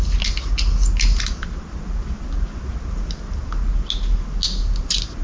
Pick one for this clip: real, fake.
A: real